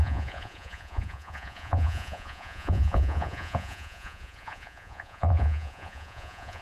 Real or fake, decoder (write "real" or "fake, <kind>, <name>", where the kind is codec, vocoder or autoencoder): fake, vocoder, Vocos